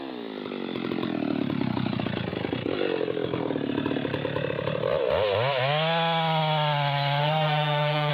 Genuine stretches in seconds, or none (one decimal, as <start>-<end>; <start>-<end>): 0.0-7.2